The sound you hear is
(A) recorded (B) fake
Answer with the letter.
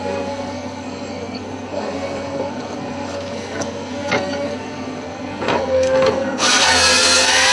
B